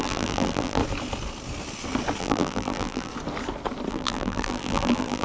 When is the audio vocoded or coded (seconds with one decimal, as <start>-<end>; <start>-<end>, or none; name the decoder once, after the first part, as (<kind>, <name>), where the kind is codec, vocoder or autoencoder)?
0.0-0.8 (vocoder, BigVGAN v2); 2.2-3.1; 3.9-5.2